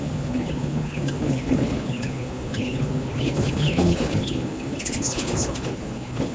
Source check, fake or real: fake